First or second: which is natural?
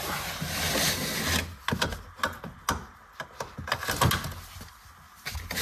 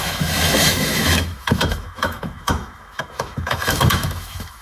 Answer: first